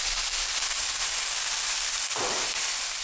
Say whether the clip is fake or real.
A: real